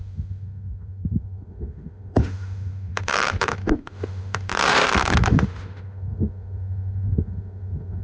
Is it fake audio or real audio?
fake